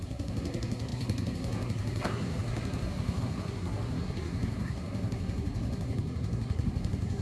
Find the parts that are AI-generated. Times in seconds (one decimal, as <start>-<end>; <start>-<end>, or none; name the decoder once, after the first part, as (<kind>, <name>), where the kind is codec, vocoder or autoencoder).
0.0-7.2 (codec, SNAC)